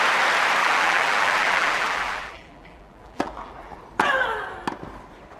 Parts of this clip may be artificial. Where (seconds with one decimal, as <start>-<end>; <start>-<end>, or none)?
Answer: 0.6-3.8